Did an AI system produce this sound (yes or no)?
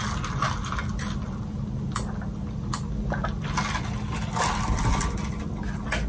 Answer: no